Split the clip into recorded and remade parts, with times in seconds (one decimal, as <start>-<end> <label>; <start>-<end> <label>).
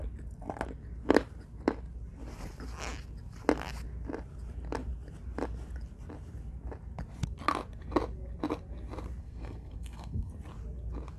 0.0-9.2 recorded; 9.2-10.3 remade; 10.3-11.2 recorded